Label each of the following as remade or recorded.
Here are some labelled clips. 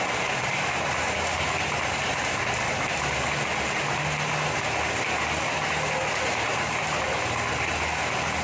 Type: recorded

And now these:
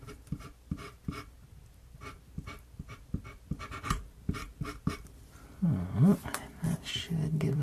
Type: remade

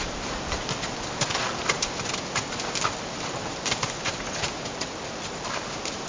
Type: recorded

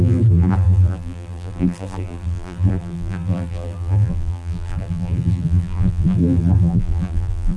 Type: remade